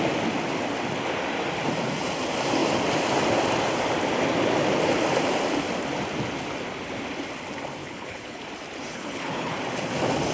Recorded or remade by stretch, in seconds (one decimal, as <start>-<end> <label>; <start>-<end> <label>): 0.0-7.8 recorded; 7.8-8.4 remade; 8.4-8.9 recorded; 8.9-9.5 remade; 9.5-10.3 recorded